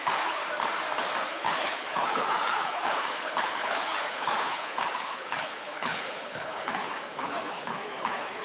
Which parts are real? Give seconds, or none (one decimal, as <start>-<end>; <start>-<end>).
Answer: 0.4-1.2